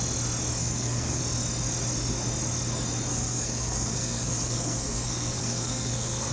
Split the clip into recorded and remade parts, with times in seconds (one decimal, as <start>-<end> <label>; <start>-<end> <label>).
0.0-0.6 recorded; 0.6-1.2 remade; 1.2-3.1 recorded; 3.1-6.3 remade